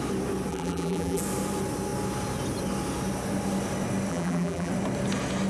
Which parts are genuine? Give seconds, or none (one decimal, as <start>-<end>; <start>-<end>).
0.0-0.5; 1.2-4.1; 4.7-5.5